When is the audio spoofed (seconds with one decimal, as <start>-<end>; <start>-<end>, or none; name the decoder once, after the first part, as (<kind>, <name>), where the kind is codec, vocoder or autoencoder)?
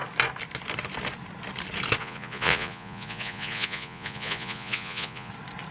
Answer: 2.0-5.3 (vocoder, Vocos)